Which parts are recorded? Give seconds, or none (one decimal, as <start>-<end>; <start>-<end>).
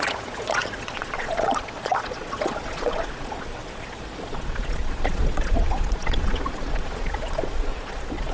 none